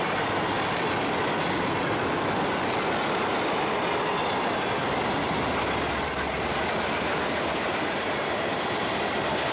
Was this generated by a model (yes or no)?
no